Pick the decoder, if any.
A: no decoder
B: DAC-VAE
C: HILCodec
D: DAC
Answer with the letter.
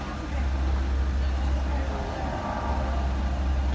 A